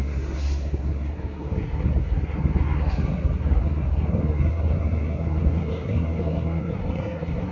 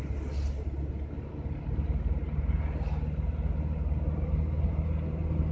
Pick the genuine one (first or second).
second